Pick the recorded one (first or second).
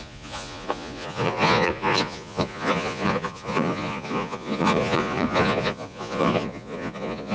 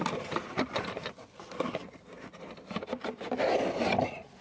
second